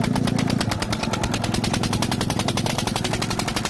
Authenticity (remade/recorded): recorded